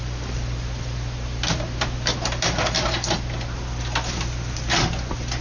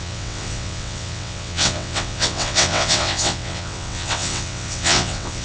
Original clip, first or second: first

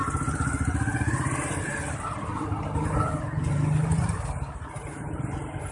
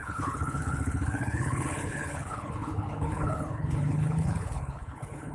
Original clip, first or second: first